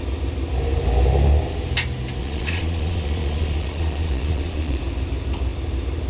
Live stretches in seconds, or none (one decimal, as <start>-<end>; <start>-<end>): 0.0-2.2; 4.8-6.1